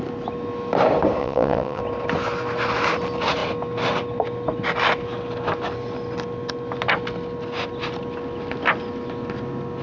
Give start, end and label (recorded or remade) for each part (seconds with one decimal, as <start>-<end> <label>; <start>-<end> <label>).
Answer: 0.0-1.2 recorded; 1.2-1.8 remade; 1.8-9.8 recorded